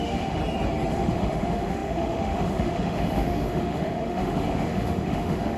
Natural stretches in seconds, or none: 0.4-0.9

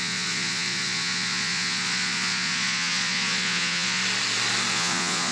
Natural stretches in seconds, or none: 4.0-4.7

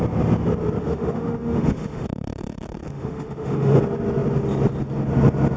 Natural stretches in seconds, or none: 0.0-0.8; 3.8-5.6

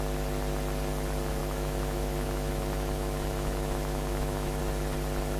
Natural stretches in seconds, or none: 0.0-1.4; 4.6-5.4

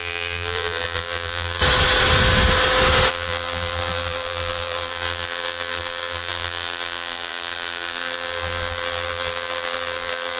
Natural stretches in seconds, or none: 1.6-3.1

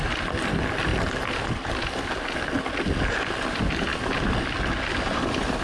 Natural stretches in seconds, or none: 0.0-5.6

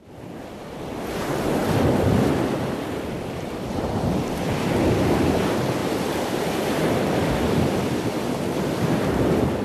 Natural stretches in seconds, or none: 0.0-1.6; 4.2-5.8; 7.3-9.6

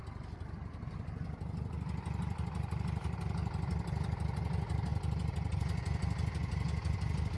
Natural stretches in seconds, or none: 0.0-7.4